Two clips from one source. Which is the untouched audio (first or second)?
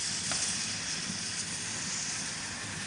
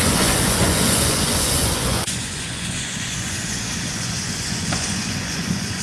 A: first